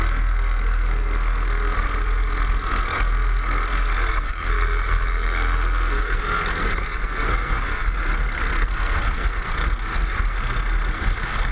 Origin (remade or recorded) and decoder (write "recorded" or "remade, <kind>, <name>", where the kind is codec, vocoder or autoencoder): remade, codec, SNAC